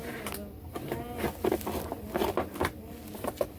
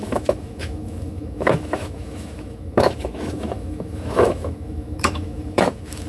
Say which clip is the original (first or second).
first